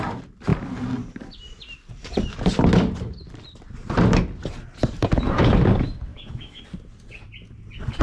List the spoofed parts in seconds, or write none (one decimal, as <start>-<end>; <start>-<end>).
6.1-6.6